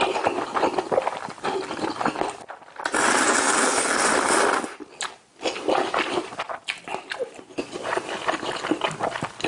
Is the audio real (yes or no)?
yes